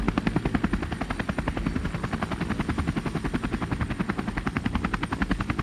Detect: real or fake real